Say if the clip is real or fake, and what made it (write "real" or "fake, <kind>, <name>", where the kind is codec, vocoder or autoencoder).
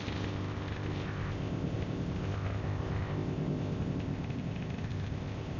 fake, codec, ZipCodec